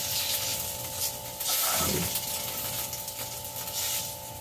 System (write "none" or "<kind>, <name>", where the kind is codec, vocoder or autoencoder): none